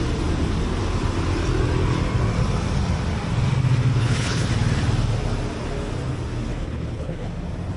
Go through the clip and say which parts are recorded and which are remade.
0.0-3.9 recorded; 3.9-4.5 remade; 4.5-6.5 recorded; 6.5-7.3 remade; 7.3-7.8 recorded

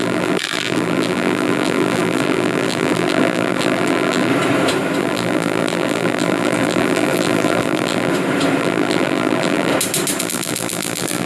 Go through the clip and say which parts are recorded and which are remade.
0.0-4.3 remade; 4.3-5.0 recorded; 5.0-8.1 remade; 8.1-8.6 recorded; 8.6-9.7 remade; 9.7-10.2 recorded; 10.2-11.2 remade

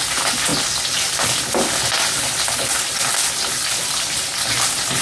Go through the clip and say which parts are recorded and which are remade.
0.0-5.0 recorded

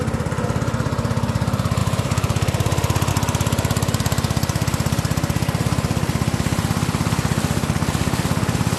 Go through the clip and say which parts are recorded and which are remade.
0.0-1.8 recorded; 1.8-3.1 remade; 3.1-8.8 recorded

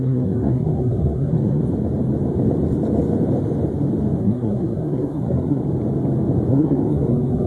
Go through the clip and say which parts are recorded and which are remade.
0.0-1.6 remade; 1.6-4.2 recorded; 4.2-5.6 remade; 5.6-6.5 recorded; 6.5-7.5 remade

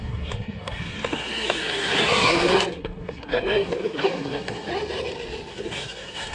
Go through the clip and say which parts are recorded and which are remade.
0.0-4.7 remade; 4.7-5.5 recorded; 5.5-6.3 remade